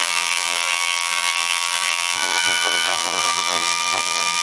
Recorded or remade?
remade